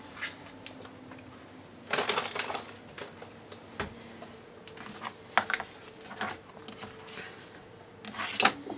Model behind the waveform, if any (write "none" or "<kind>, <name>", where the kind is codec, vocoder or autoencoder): none